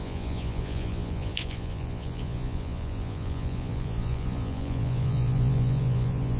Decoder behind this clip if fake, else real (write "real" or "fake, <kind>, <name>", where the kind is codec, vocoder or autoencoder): fake, vocoder, Vocos